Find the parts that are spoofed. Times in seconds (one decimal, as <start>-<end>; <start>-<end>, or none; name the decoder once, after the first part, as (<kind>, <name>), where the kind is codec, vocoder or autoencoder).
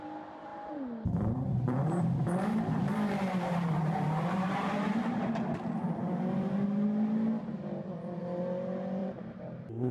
0.5-5.1 (vocoder, BigVGAN v2); 9.0-9.9